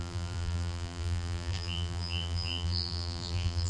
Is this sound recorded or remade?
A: remade